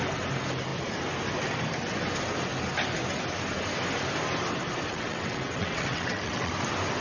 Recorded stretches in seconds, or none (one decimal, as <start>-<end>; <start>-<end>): 0.0-4.9; 6.5-7.0